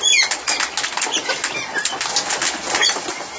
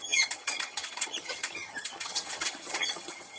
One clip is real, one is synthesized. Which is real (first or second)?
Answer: first